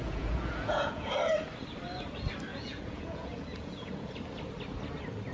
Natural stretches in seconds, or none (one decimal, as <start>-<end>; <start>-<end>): 1.1-2.5; 4.1-5.3